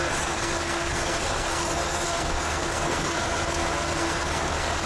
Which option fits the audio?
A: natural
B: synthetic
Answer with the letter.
B